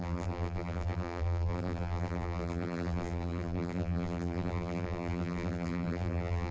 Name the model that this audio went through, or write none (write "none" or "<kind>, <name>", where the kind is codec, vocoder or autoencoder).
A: vocoder, BigVGAN v2